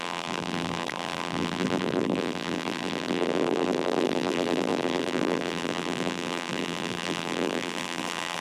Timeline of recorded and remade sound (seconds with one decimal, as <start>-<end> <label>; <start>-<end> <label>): 0.0-8.4 remade